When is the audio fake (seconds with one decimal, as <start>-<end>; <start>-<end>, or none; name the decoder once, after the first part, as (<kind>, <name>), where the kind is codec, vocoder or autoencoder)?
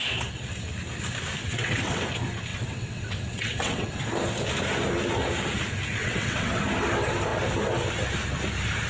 1.4-2.0 (vocoder, WaveNeXt); 2.5-3.9; 6.0-6.6